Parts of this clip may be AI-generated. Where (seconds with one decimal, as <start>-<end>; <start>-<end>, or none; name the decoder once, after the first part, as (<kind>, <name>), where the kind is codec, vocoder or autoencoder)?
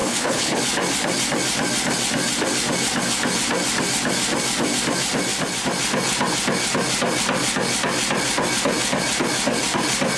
0.0-0.6 (codec, HILCodec)